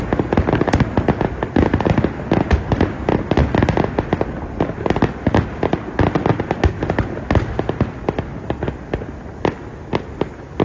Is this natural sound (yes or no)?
yes